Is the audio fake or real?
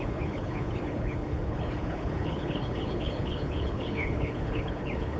fake